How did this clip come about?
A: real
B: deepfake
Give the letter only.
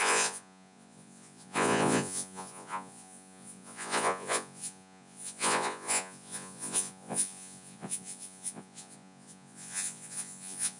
B